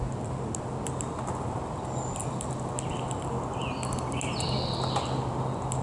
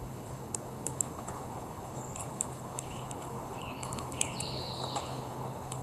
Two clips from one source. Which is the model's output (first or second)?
second